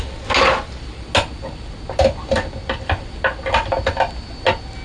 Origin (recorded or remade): recorded